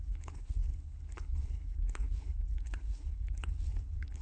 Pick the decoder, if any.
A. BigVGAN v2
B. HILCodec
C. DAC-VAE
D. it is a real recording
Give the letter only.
B